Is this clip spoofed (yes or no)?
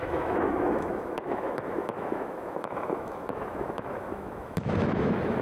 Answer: yes